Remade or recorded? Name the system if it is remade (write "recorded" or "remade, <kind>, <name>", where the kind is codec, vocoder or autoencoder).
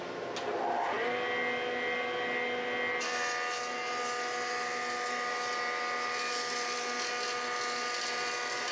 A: recorded